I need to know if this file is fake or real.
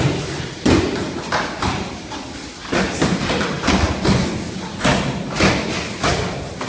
real